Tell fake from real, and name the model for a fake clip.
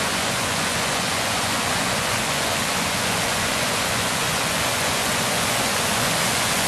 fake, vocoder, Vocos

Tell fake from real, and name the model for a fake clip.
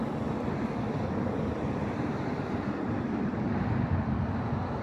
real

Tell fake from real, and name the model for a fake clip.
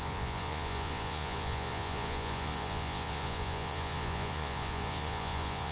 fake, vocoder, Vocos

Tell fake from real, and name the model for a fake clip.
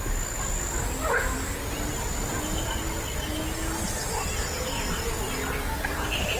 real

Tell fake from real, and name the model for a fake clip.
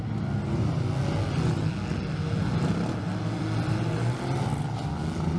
real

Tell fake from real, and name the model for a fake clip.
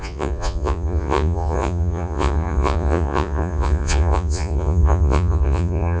fake, vocoder, Vocos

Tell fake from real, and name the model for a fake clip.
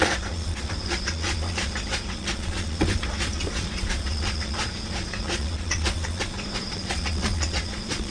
fake, vocoder, Vocos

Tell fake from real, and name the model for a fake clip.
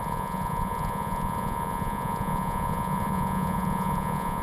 fake, vocoder, Vocos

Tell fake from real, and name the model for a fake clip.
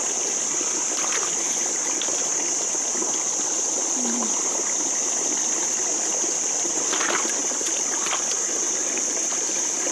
real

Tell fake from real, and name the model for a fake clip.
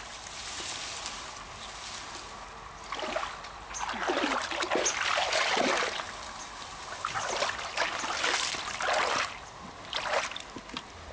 real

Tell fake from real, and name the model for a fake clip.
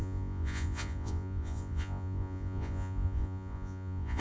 fake, vocoder, Vocos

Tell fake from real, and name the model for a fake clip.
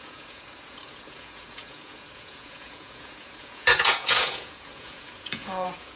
fake, vocoder, Vocos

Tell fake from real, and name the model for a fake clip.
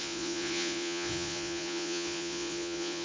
fake, vocoder, Vocos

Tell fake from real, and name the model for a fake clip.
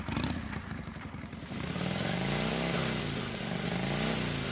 real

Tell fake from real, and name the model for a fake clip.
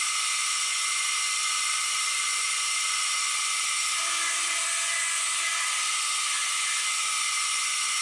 fake, vocoder, Vocos